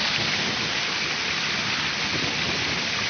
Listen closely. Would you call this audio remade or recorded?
recorded